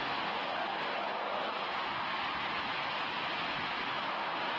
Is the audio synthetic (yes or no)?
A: no